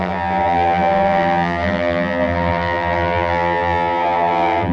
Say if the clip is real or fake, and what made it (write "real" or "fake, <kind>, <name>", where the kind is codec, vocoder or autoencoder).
fake, vocoder, BigVGAN v2